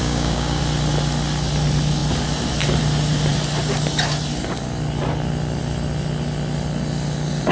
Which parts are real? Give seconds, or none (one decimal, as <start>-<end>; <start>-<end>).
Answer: 0.6-7.5